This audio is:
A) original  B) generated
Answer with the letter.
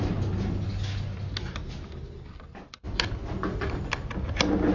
A